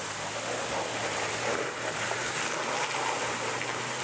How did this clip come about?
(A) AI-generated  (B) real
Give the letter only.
B